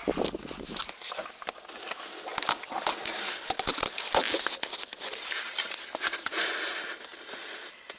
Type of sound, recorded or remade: recorded